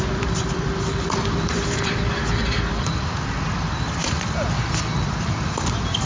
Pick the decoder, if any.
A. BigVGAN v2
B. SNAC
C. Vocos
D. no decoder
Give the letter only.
A